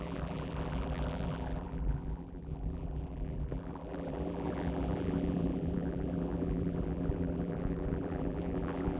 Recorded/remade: remade